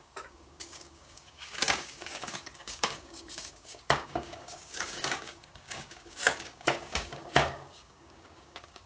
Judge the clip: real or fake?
fake